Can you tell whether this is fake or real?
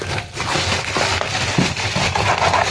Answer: real